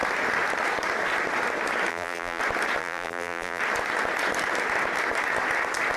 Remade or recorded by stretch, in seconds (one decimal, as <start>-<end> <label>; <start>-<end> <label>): 0.0-1.9 recorded; 1.9-2.4 remade; 2.4-2.8 recorded; 2.8-3.6 remade; 3.6-6.0 recorded